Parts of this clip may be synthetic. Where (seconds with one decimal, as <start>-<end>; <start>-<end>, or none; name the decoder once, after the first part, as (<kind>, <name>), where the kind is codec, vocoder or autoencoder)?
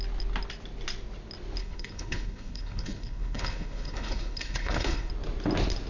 1.6-5.1 (codec, HILCodec)